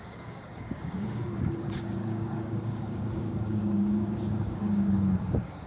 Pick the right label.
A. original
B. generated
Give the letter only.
B